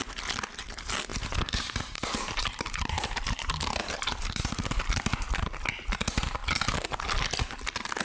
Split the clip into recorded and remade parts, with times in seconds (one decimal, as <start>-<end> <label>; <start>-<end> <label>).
0.0-1.1 recorded; 1.1-4.8 remade; 4.8-8.0 recorded